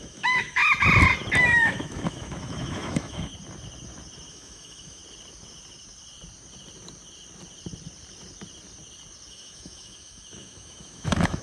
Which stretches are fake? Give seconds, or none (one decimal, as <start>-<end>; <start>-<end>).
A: 0.0-0.6; 1.4-3.3; 4.3-5.0; 9.3-11.4